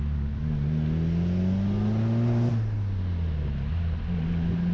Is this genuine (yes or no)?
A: yes